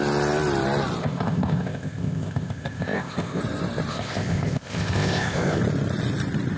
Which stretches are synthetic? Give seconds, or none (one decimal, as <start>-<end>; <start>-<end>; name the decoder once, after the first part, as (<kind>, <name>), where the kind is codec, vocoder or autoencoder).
1.0-3.4 (codec, ZipCodec); 3.9-5.6